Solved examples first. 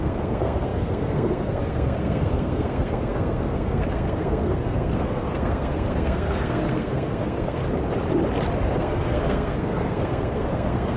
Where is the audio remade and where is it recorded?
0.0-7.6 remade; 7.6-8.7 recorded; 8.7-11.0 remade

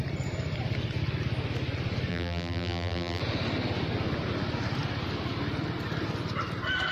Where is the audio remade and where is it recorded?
0.0-2.1 recorded; 2.1-3.2 remade; 3.2-6.9 recorded

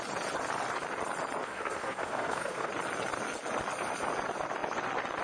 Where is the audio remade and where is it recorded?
0.0-1.4 recorded; 1.4-2.7 remade; 2.7-5.2 recorded

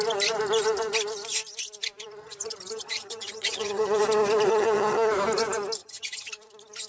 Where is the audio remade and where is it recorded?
0.0-2.2 recorded; 2.2-4.0 remade; 4.0-4.5 recorded; 4.5-5.1 remade; 5.1-5.8 recorded; 5.8-6.3 remade; 6.3-6.9 recorded

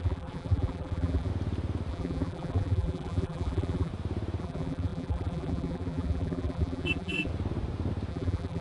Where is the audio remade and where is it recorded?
0.0-1.3 remade; 1.3-1.9 recorded; 1.9-3.9 remade; 3.9-4.4 recorded; 4.4-7.3 remade; 7.3-8.1 recorded; 8.1-8.6 remade

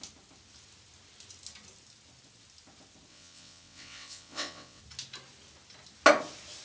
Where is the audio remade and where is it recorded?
0.0-3.1 recorded; 3.1-4.8 remade; 4.8-6.6 recorded

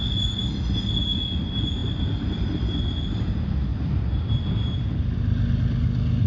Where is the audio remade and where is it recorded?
0.0-6.3 recorded